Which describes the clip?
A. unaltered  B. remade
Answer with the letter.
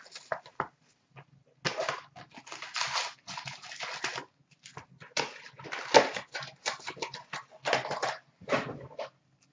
A